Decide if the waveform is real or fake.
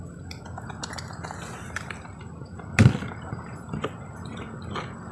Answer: real